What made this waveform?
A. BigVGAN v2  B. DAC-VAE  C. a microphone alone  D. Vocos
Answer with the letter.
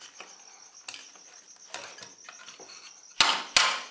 C